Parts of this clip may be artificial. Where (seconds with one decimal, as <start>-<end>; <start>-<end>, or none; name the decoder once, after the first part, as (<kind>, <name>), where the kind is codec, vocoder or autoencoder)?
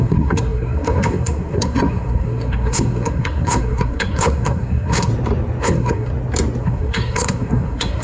0.0-5.1 (codec, SNAC); 5.6-6.1; 6.6-8.0